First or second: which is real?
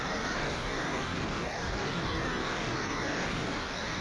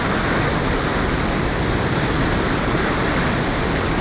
second